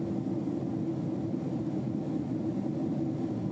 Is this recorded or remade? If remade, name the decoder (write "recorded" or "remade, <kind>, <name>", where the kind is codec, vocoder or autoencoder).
recorded